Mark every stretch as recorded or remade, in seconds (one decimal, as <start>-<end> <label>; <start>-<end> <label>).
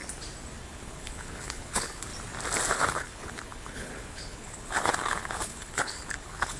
0.0-0.6 recorded; 0.6-2.1 remade; 2.1-2.7 recorded; 2.7-6.6 remade